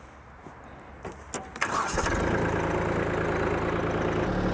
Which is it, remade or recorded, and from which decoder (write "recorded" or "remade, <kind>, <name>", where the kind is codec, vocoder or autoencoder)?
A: recorded